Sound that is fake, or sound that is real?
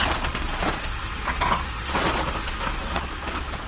fake